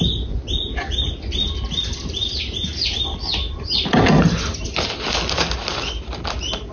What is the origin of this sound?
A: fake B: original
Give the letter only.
B